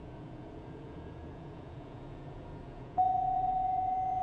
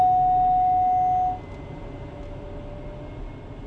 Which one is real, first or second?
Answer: second